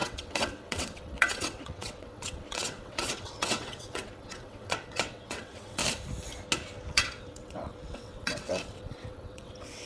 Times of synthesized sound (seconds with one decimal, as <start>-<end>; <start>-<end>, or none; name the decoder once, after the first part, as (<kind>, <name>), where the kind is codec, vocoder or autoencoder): 0.0-5.8 (vocoder, WaveNeXt); 6.9-9.9